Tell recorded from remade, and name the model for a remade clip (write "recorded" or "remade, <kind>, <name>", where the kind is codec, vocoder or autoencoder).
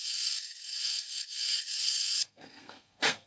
remade, codec, SNAC